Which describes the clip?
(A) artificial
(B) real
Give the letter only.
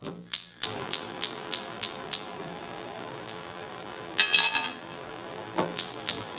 A